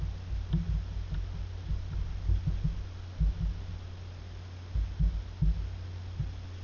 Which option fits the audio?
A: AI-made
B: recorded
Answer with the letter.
B